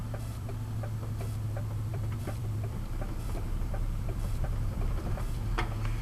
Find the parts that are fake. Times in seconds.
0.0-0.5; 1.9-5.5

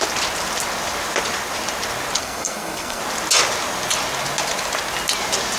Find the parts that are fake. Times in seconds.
2.2-3.0

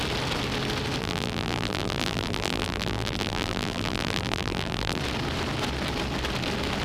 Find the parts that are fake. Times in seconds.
1.0-5.0

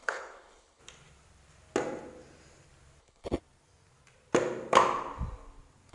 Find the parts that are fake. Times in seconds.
0.0-0.8; 3.0-3.4

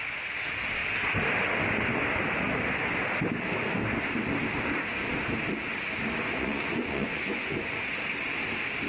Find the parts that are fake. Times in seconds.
6.3-7.5

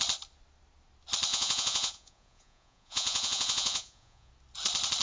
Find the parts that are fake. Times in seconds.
1.3-4.3

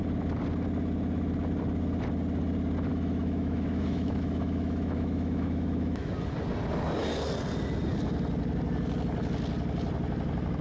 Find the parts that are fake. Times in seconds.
2.9-6.1

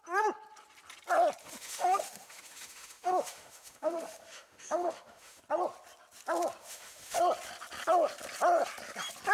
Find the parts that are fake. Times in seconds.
1.4-5.4; 6.6-7.2